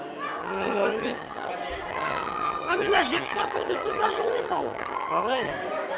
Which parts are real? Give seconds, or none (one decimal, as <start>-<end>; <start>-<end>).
0.0-0.4; 1.5-1.9; 5.5-6.0